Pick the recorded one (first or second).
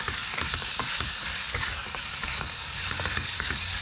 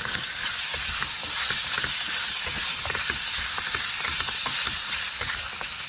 second